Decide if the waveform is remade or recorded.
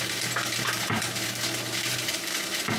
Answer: remade